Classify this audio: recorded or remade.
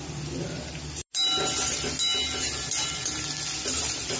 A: recorded